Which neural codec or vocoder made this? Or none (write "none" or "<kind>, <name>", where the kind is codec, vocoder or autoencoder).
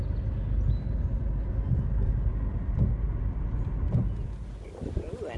none